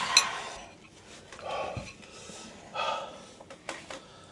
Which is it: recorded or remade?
recorded